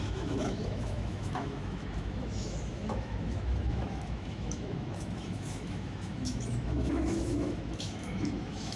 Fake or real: fake